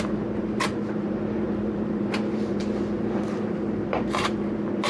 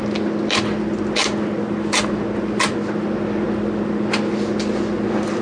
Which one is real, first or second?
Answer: second